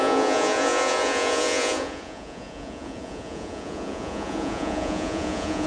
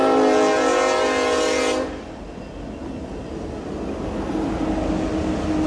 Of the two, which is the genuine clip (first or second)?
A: second